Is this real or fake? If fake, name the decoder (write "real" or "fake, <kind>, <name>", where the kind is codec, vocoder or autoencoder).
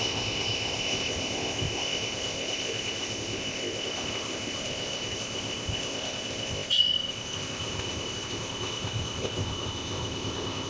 fake, codec, ZipCodec